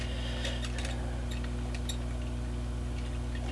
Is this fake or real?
real